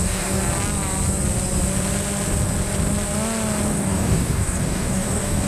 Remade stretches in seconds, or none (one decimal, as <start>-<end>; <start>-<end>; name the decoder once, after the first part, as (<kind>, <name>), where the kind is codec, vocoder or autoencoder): 0.0-0.4 (codec, DAC); 3.7-5.5